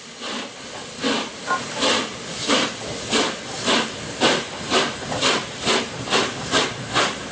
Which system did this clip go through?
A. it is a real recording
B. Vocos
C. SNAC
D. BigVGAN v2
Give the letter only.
A